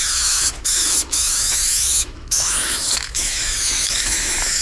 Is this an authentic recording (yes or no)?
no